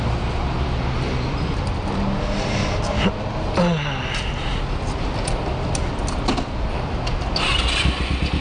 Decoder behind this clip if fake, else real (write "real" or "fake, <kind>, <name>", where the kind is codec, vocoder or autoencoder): real